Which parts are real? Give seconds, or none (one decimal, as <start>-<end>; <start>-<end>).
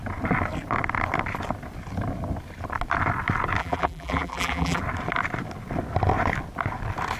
0.0-3.6; 4.8-7.2